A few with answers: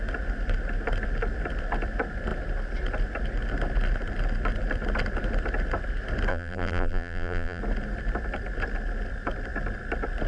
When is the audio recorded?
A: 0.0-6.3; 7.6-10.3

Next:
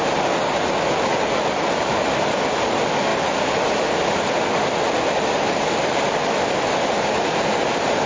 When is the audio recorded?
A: 0.0-8.1

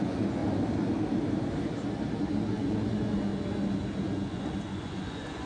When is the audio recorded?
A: 0.4-2.3; 3.3-4.0